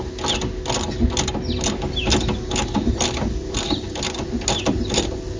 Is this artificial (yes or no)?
no